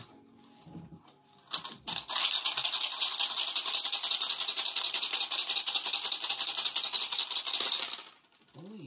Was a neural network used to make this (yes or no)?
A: no